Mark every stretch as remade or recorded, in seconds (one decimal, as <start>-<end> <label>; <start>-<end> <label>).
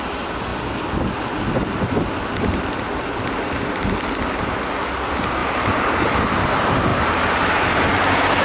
0.0-5.4 recorded; 5.4-6.5 remade; 6.5-8.4 recorded